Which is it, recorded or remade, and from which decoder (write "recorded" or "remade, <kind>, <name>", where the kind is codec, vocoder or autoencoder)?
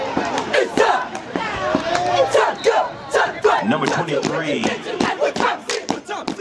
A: remade, vocoder, BigVGAN v2